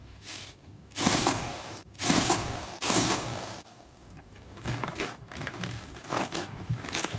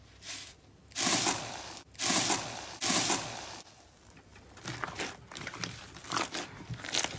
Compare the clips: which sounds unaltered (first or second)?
second